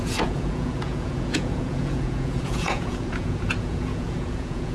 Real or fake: fake